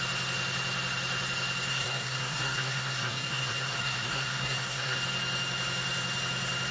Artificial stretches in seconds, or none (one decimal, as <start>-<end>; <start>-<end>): 1.7-5.0